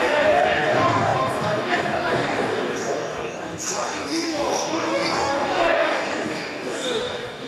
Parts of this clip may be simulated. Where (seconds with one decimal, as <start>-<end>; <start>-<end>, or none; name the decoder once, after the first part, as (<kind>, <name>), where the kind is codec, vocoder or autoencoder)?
0.0-7.5 (codec, DAC)